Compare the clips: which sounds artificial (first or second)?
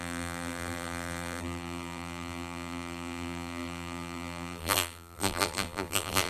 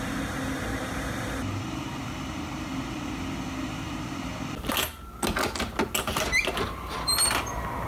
first